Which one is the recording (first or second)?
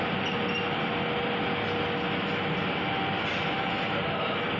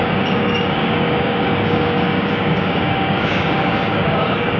first